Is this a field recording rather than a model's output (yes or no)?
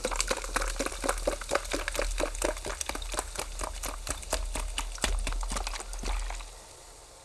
yes